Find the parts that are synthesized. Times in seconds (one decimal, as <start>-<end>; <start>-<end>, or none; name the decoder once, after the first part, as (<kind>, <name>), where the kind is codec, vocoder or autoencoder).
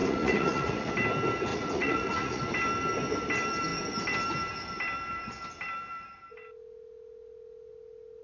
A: 0.0-0.9 (vocoder, Vocos); 1.5-2.4